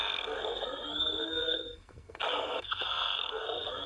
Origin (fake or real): fake